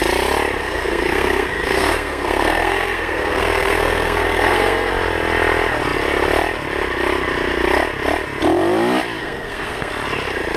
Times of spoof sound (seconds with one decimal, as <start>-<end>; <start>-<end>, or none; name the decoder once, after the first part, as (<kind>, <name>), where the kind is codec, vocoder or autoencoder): 0.6-4.9 (codec, SNAC); 9.2-9.9